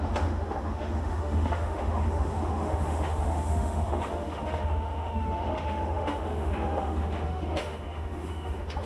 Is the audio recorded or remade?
remade